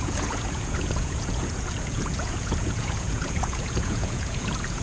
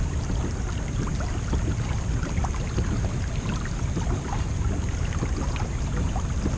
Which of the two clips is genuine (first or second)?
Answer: second